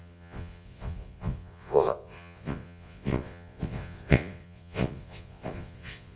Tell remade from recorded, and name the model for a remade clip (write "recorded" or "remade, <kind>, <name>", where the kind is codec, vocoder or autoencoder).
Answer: remade, vocoder, Vocos